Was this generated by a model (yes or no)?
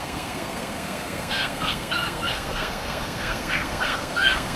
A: yes